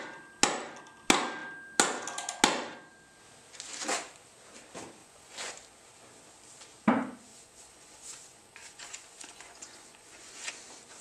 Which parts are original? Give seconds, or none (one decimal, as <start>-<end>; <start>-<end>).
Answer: 0.0-5.0; 5.5-7.3; 10.5-11.0